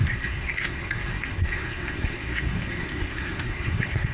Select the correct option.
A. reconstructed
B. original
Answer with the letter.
A